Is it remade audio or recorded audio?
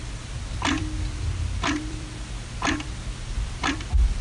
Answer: remade